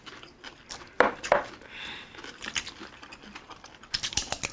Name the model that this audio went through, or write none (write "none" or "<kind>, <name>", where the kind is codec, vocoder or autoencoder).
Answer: vocoder, BigVGAN v2